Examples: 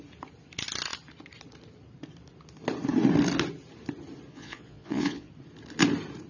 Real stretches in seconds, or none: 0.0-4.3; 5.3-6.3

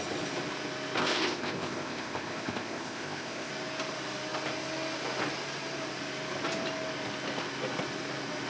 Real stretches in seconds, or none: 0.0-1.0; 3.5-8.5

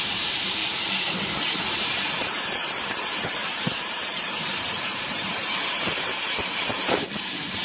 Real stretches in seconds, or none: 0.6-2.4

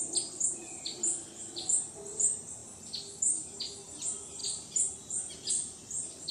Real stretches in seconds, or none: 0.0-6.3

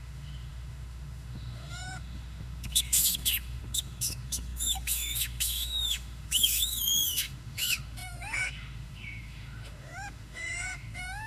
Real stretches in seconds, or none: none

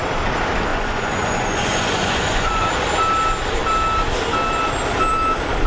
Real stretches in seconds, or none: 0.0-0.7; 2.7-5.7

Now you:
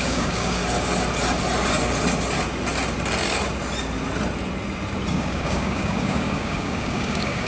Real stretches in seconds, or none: 0.6-5.1